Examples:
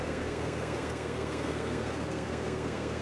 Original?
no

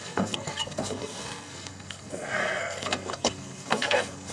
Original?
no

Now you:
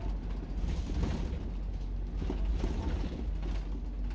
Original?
yes